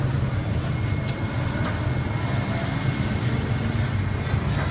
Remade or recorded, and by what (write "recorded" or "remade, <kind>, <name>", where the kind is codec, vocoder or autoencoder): recorded